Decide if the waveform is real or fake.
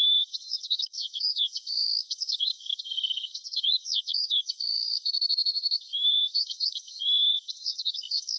fake